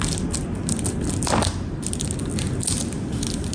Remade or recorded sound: recorded